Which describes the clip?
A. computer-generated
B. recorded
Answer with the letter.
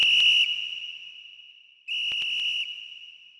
B